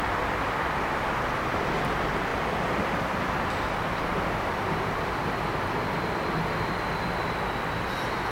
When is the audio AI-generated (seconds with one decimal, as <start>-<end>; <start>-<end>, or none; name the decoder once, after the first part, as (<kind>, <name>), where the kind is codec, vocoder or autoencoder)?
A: none